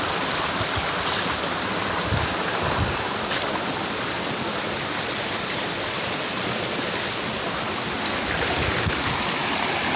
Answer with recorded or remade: remade